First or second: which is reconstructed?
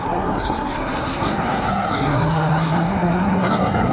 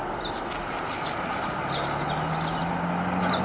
first